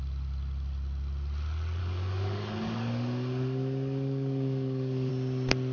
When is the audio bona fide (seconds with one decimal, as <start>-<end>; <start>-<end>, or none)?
0.0-1.8; 5.1-5.7